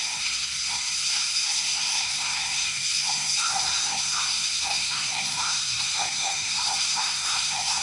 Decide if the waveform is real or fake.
fake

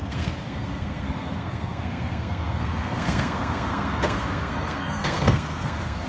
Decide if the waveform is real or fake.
fake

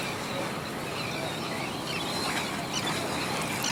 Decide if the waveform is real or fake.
real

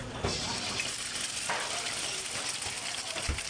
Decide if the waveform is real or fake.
real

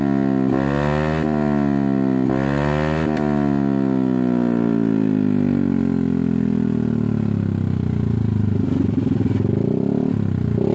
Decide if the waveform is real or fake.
real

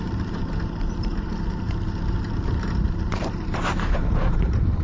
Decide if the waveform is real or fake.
fake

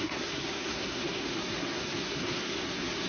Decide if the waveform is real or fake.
fake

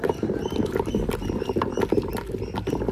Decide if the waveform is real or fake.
real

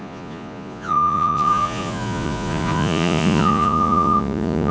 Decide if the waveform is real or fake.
fake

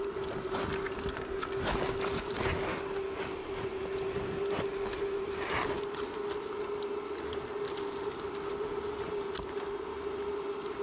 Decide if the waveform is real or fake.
real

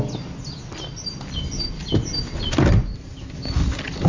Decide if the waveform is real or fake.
real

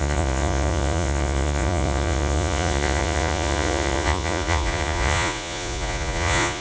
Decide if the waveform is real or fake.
fake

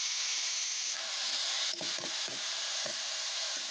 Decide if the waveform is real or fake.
real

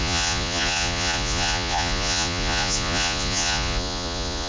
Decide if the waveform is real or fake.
fake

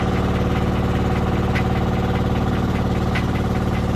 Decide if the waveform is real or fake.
real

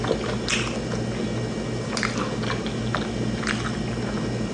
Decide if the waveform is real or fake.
real